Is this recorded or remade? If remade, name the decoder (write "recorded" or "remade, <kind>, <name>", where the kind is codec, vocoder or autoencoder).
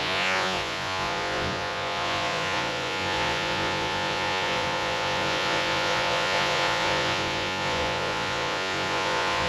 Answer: remade, vocoder, Vocos